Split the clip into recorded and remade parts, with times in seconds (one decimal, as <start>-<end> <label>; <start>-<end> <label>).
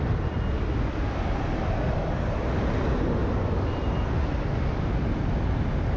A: 0.0-6.0 recorded